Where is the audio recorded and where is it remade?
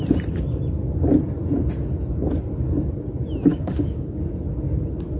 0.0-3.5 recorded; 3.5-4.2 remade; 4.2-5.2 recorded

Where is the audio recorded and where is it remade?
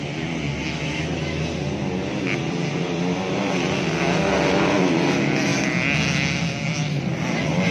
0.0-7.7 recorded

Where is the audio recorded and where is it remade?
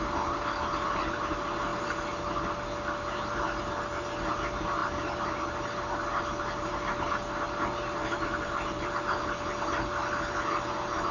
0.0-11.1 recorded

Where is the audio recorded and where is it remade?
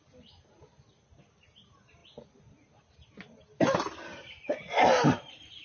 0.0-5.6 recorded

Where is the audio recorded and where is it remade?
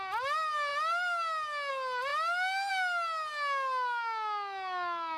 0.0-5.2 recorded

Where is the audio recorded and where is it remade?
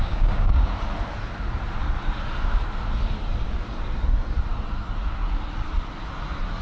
0.0-0.7 remade; 0.7-6.6 recorded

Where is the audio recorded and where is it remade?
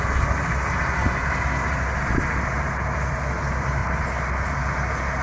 0.0-5.2 recorded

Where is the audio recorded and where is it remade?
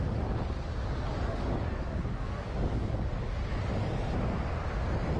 0.0-1.1 recorded; 1.1-3.5 remade; 3.5-5.2 recorded